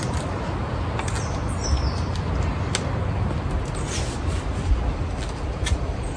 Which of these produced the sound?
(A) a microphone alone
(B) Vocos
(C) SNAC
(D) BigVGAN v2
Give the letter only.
A